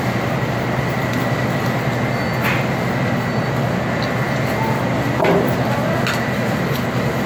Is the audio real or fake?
real